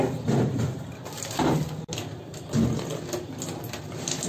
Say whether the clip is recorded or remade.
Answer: remade